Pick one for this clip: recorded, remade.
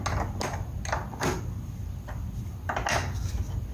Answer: recorded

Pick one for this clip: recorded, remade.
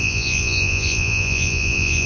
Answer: remade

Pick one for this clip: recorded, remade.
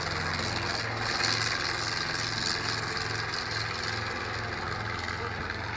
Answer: recorded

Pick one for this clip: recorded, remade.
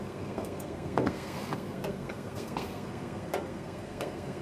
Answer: remade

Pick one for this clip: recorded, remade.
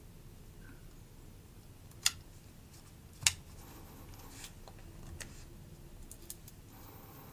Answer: recorded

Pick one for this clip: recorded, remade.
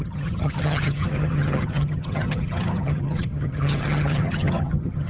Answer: remade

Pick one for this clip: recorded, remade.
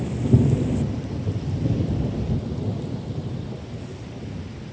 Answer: recorded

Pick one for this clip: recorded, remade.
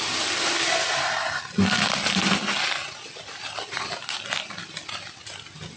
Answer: recorded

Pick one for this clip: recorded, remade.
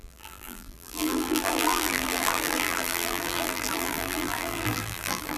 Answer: remade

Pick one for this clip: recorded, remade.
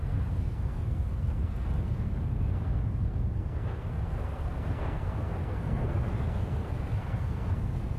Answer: remade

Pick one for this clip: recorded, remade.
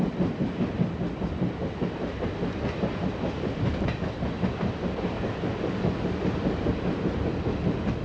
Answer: recorded